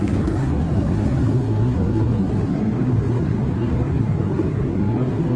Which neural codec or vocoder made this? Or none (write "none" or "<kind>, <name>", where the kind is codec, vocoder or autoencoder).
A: codec, SNAC